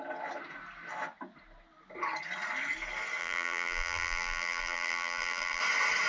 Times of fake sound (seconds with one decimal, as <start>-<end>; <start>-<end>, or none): 3.2-5.6